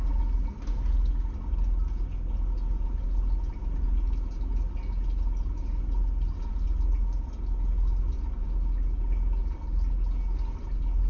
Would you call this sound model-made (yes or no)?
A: no